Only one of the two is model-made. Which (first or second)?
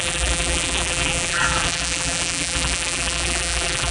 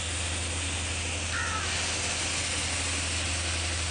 first